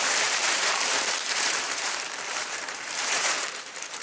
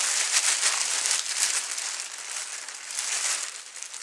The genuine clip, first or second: second